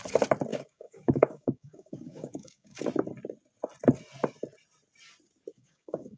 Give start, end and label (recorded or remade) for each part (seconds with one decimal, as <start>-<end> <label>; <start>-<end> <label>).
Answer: 0.0-0.5 recorded; 0.5-2.8 remade; 2.8-5.5 recorded; 5.5-6.2 remade